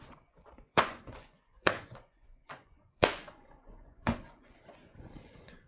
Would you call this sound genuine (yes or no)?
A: no